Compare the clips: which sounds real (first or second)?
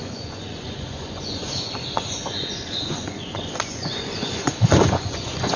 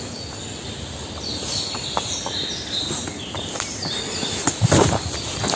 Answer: second